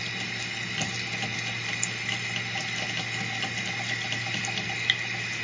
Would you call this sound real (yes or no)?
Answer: yes